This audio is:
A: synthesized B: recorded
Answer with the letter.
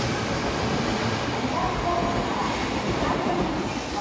B